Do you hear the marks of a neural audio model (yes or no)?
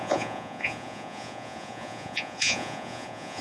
yes